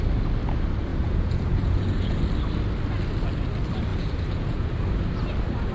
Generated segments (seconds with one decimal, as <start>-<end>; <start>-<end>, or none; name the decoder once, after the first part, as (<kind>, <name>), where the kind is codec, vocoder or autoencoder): 0.9-2.2 (vocoder, Vocos); 3.9-4.7